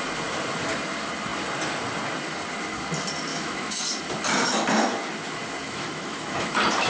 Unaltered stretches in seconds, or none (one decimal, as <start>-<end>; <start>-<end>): 0.0-3.3; 3.8-5.6; 6.5-6.9